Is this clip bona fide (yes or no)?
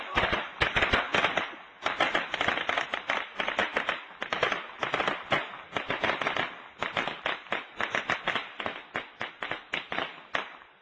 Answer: yes